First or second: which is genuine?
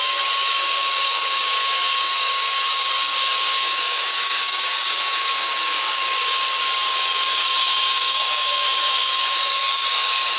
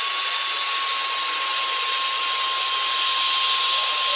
second